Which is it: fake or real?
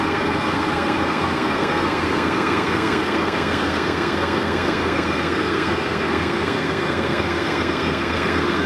fake